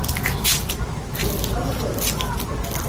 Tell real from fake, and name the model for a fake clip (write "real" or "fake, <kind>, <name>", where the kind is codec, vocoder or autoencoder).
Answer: real